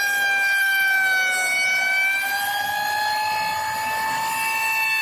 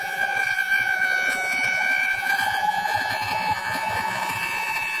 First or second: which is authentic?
first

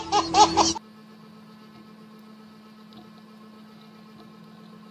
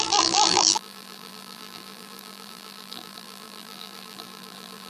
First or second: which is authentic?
first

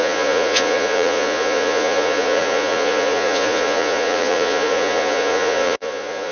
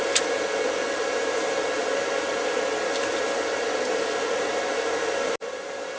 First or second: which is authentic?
second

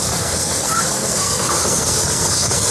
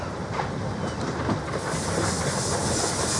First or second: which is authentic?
second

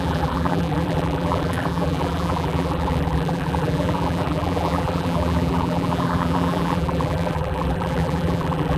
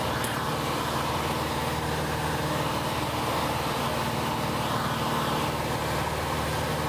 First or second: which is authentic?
second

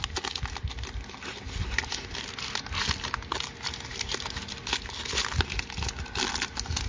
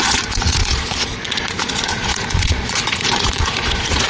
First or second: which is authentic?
first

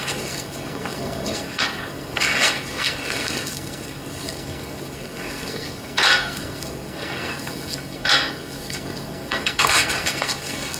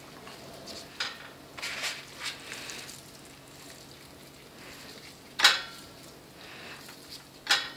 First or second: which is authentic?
second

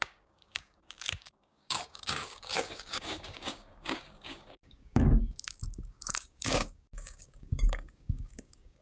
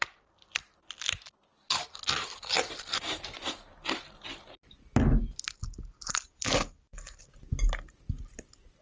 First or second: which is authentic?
second